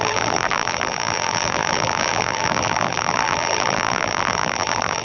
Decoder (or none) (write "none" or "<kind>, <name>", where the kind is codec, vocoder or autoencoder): vocoder, BigVGAN v2